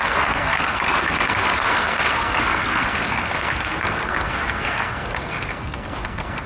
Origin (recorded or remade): remade